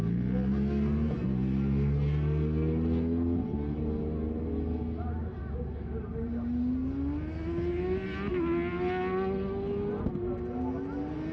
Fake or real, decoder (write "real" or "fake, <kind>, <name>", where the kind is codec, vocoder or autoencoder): real